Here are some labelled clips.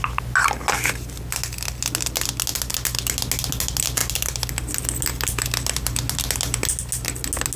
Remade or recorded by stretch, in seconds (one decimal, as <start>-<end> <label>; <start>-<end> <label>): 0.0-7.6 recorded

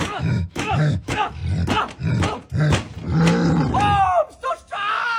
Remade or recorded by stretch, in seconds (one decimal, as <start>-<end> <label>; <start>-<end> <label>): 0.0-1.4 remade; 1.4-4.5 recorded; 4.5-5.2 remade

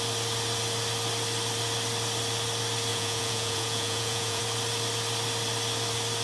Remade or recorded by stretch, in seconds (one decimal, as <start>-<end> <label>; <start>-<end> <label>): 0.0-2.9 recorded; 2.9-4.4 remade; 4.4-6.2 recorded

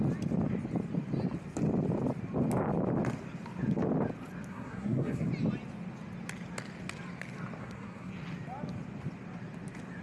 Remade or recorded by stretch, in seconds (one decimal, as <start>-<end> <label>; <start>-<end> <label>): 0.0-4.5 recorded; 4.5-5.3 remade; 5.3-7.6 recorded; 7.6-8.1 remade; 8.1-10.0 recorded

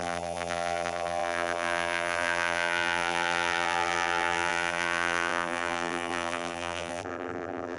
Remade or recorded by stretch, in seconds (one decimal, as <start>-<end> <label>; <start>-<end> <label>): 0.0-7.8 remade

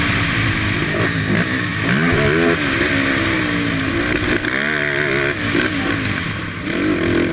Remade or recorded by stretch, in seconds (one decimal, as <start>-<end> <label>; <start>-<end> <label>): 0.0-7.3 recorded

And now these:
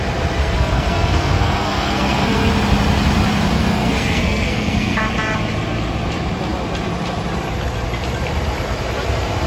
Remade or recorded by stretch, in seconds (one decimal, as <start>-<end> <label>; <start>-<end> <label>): 0.0-0.4 recorded; 0.4-2.5 remade; 2.5-3.6 recorded; 3.6-5.0 remade; 5.0-9.5 recorded

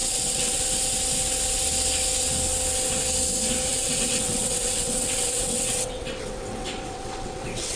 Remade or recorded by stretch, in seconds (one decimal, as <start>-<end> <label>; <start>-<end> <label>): 0.0-0.6 remade; 0.6-3.7 recorded; 3.7-7.8 remade